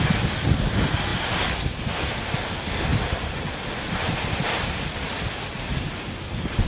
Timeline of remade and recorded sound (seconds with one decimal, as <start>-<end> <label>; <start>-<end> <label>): 0.0-6.7 recorded